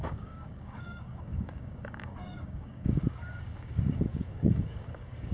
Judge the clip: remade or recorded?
remade